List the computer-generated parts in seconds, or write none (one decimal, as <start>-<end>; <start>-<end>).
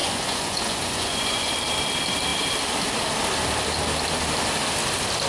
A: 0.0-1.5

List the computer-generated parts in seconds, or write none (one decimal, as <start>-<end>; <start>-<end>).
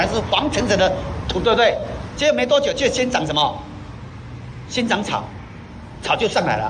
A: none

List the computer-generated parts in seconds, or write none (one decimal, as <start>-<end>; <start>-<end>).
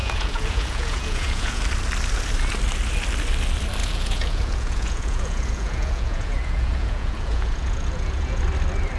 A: 0.0-1.6; 3.8-8.4